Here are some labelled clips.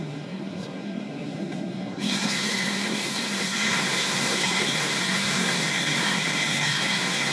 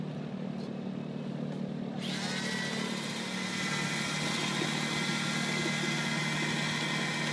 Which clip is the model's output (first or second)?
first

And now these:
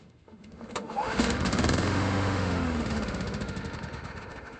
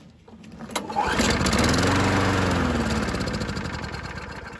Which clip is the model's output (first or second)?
first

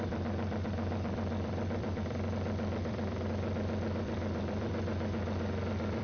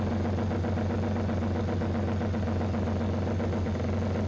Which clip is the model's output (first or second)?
first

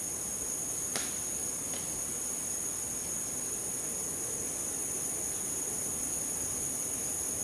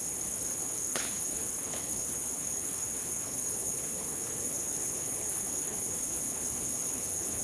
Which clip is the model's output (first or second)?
second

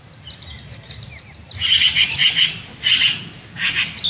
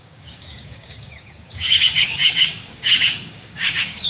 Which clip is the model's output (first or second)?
second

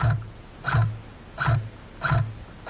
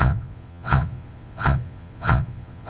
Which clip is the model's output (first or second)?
second